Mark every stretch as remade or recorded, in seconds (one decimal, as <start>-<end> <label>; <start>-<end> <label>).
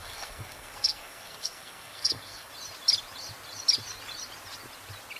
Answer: 0.0-2.5 remade; 2.5-5.2 recorded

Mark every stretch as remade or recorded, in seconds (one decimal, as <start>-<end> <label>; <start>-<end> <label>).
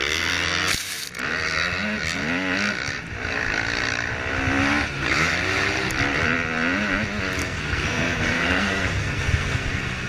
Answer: 0.0-7.4 recorded; 7.4-10.1 remade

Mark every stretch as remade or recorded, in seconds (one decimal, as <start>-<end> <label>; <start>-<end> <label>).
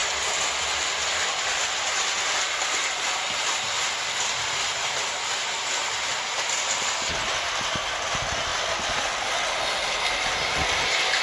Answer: 0.0-11.2 recorded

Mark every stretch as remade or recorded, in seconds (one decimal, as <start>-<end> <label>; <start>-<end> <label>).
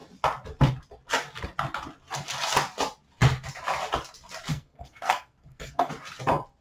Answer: 0.0-4.5 recorded; 4.5-5.9 remade; 5.9-6.6 recorded